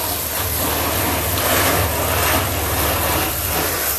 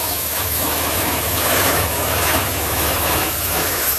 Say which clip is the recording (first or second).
first